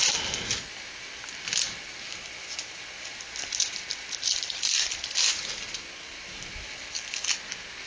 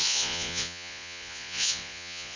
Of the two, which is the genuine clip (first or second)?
first